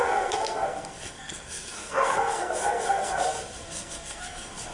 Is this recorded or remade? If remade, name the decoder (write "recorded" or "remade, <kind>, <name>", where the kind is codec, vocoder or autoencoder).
remade, codec, SNAC